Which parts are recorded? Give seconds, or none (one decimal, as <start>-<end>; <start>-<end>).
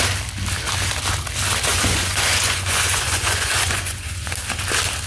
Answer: 0.0-1.7; 4.3-5.1